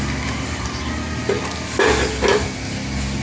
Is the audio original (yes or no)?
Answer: yes